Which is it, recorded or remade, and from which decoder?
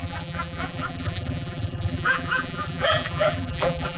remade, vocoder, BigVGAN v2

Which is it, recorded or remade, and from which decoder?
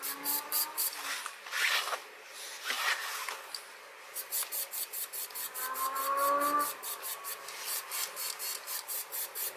recorded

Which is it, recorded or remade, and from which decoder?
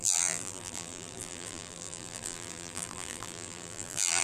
remade, vocoder, BigVGAN v2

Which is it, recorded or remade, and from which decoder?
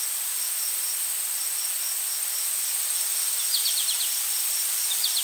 recorded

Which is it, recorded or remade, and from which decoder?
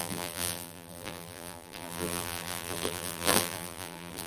remade, vocoder, BigVGAN v2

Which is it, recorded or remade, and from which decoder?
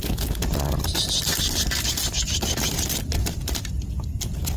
recorded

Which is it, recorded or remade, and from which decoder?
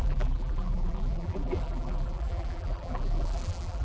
remade, vocoder, BigVGAN v2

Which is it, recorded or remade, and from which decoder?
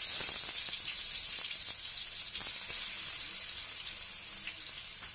recorded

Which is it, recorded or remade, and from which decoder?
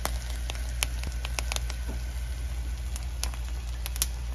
recorded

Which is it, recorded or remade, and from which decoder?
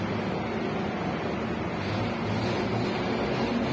recorded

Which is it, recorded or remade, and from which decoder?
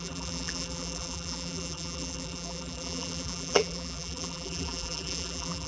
remade, vocoder, BigVGAN v2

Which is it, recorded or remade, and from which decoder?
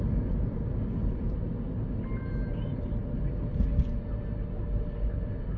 recorded